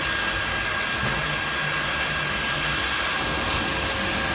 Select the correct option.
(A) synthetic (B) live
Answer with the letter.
B